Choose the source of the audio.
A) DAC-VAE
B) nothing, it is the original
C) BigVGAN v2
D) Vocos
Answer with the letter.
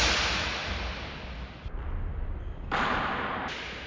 B